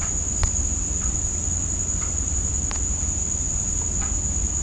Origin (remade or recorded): recorded